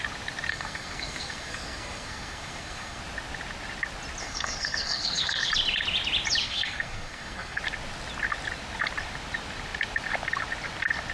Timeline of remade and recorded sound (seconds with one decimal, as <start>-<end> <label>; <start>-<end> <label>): 0.0-0.5 recorded; 0.5-3.0 remade; 3.0-4.2 recorded; 4.2-5.5 remade; 5.5-6.4 recorded; 6.4-7.6 remade; 7.6-11.1 recorded